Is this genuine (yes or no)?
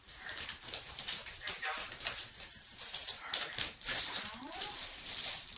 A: no